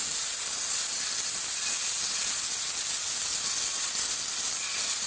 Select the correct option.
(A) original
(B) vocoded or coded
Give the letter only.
A